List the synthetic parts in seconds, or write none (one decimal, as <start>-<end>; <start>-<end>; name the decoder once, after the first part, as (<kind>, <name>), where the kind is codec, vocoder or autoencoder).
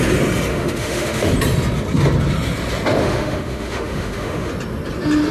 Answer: 0.5-1.3 (autoencoder, DAC-VAE); 3.0-4.5